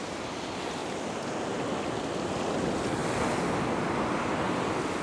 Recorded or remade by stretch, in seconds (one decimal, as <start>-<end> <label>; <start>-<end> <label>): 0.0-5.0 recorded